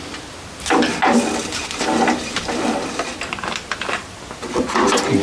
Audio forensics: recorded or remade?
recorded